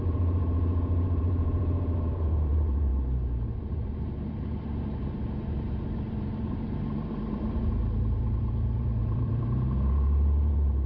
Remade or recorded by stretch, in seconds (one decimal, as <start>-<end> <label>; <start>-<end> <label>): 0.0-2.9 remade; 2.9-3.6 recorded; 3.6-10.9 remade